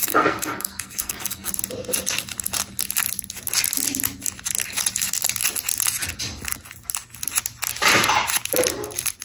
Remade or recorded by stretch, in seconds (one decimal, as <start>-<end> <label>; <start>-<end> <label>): 0.0-1.5 remade; 1.5-9.2 recorded